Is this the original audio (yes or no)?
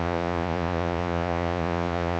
no